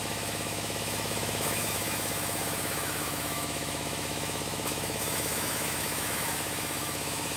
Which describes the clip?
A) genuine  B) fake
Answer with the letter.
B